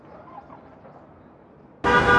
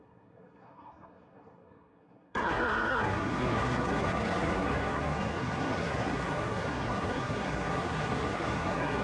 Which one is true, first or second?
first